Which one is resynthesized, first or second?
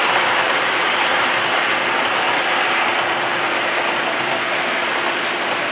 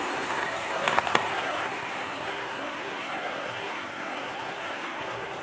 second